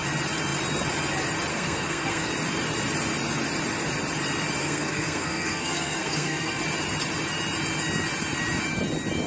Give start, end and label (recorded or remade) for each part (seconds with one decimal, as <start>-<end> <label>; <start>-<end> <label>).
0.0-1.5 recorded; 1.5-2.3 remade; 2.3-4.6 recorded; 4.6-6.6 remade; 6.6-9.3 recorded